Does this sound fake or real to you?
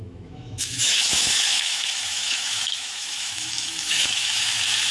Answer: fake